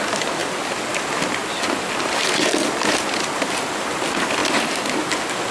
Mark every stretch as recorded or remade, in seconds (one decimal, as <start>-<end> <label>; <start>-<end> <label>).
0.0-5.5 recorded